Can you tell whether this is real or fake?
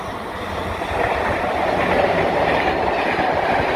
real